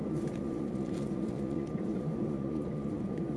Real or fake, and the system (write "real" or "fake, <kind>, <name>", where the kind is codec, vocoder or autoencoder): fake, vocoder, Vocos